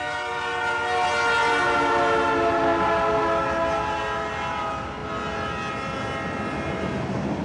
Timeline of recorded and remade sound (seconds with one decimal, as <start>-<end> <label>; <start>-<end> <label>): 0.0-7.4 recorded